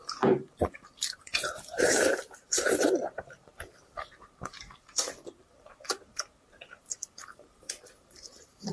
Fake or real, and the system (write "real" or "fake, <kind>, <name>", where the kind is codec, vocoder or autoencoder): fake, vocoder, BigVGAN v2